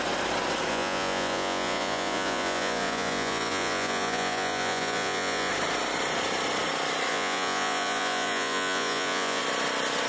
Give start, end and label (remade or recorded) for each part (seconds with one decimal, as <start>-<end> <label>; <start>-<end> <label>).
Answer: 0.0-0.7 recorded; 0.7-5.5 remade; 5.5-7.1 recorded; 7.1-9.4 remade; 9.4-10.1 recorded